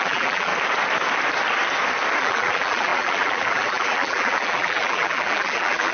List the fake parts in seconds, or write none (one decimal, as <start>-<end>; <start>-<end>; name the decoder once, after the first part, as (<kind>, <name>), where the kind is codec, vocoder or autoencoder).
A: 0.0-0.5 (vocoder, BigVGAN v2); 2.2-5.9